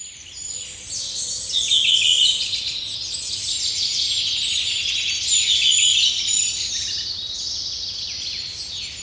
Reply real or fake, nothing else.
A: real